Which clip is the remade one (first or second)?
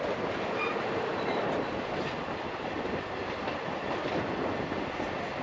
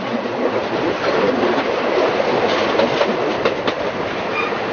second